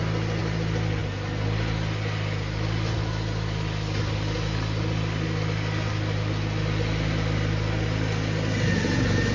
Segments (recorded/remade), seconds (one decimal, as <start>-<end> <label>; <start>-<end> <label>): 0.0-9.3 recorded

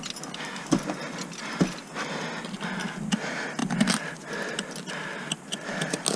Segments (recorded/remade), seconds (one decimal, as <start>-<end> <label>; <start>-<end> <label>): 0.0-6.2 recorded

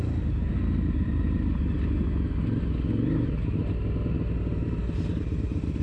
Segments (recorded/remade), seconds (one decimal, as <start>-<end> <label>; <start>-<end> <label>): 0.0-1.6 remade; 1.6-4.5 recorded; 4.5-5.8 remade

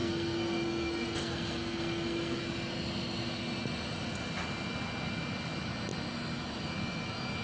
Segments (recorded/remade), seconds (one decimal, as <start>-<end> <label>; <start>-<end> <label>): 0.0-2.4 remade; 2.4-7.4 recorded

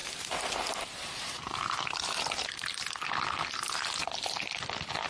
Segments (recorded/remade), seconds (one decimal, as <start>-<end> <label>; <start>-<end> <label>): 0.0-3.1 remade; 3.1-5.1 recorded

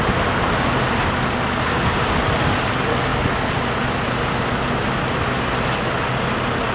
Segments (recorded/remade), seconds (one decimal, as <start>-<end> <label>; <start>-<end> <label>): 0.0-6.7 recorded

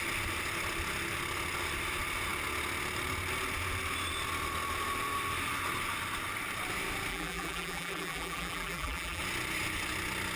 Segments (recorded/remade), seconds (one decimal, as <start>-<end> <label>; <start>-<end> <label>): 0.0-7.1 recorded; 7.1-9.2 remade; 9.2-10.4 recorded